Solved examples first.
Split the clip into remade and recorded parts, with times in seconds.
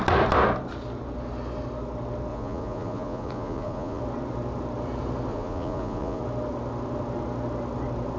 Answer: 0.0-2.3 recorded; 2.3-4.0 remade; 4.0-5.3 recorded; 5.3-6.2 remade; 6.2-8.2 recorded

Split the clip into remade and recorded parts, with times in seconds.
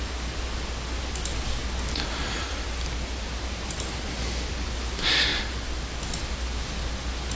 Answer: 0.0-7.3 recorded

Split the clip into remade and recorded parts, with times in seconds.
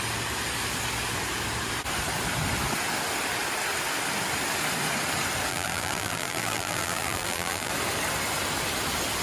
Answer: 0.0-5.5 recorded; 5.5-7.7 remade; 7.7-9.2 recorded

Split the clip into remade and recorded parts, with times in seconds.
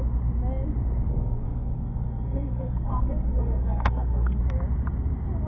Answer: 0.0-1.1 recorded; 1.1-4.4 remade; 4.4-5.5 recorded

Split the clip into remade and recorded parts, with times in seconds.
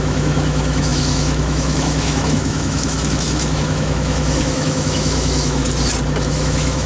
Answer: 0.0-5.6 remade; 5.6-6.2 recorded; 6.2-6.9 remade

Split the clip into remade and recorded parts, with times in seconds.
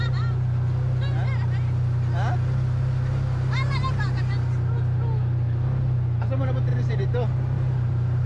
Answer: 0.0-6.7 recorded; 6.7-8.3 remade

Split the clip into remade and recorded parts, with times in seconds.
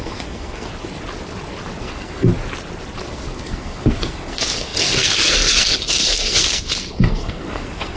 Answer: 0.0-0.7 remade; 0.7-1.8 recorded; 1.8-2.3 remade; 2.3-3.1 recorded; 3.1-8.0 remade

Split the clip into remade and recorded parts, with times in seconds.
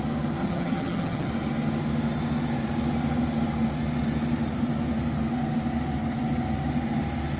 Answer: 0.0-0.4 recorded; 0.4-1.3 remade; 1.3-7.4 recorded